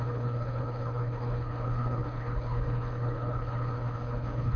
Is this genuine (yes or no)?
no